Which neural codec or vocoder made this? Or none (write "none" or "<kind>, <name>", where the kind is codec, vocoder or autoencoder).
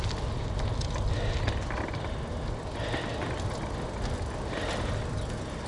none